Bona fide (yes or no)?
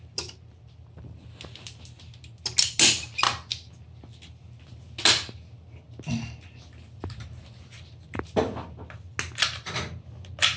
yes